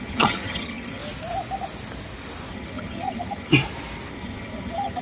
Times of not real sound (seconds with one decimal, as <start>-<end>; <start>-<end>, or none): 0.0-1.0; 2.5-3.5; 4.1-5.0